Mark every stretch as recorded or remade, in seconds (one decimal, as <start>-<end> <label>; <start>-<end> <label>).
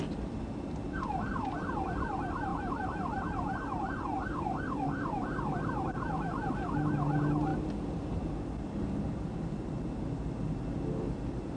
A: 0.0-2.5 recorded; 2.5-5.5 remade; 5.5-11.6 recorded